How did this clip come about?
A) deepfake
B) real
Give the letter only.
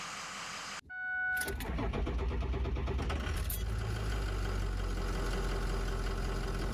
B